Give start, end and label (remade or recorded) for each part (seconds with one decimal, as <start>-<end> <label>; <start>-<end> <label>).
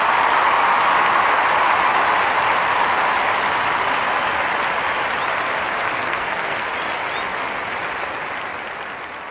0.0-5.9 recorded; 5.9-6.7 remade; 6.7-9.3 recorded